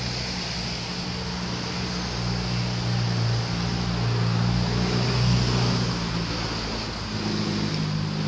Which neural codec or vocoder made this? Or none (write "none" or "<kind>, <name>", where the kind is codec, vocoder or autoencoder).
none